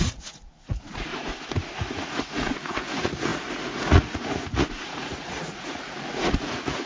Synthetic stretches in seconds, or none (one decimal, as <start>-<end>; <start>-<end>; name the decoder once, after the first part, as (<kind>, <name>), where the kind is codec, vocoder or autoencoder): 0.0-1.1 (vocoder, Vocos); 1.7-6.9